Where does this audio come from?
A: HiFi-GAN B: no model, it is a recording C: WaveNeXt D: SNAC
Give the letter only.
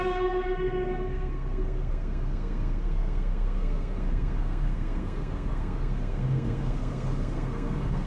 D